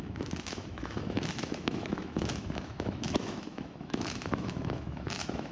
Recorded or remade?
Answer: remade